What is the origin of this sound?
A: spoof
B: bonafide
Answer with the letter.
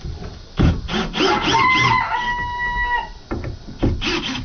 B